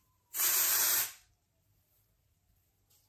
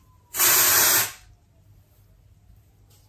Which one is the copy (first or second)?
first